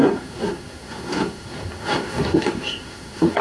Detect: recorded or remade remade